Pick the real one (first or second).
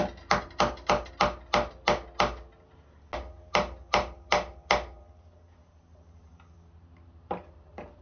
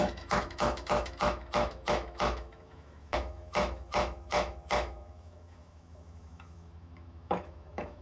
first